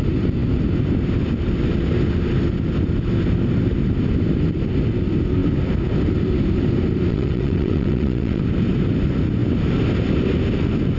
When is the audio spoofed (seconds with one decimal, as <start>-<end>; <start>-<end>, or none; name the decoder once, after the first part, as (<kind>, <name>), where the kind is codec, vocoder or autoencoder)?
7.1-8.4 (vocoder, WaveNeXt)